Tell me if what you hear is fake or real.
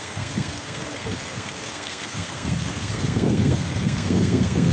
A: fake